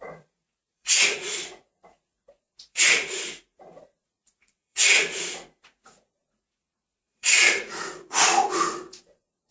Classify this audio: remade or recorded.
remade